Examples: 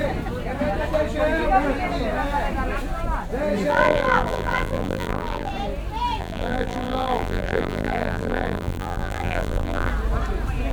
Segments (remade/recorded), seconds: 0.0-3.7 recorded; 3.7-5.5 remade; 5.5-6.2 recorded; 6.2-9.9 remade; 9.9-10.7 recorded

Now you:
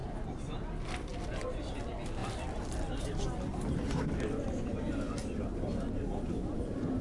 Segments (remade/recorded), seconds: 0.0-0.7 remade; 0.7-2.2 recorded; 2.2-3.0 remade; 3.0-5.2 recorded; 5.2-5.9 remade; 5.9-7.0 recorded

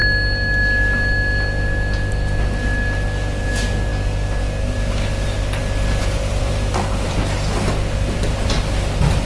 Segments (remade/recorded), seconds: 0.0-5.6 recorded; 5.6-7.2 remade; 7.2-9.3 recorded